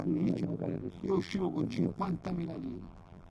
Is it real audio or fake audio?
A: fake